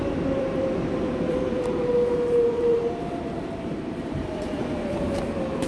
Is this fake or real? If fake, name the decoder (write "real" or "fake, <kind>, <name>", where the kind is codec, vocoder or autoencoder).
fake, vocoder, BigVGAN v2